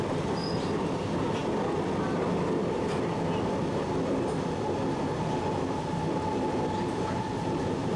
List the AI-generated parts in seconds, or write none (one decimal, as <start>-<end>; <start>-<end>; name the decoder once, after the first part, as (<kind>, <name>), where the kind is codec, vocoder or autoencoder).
none